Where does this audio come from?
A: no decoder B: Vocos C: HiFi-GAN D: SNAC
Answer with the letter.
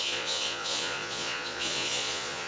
B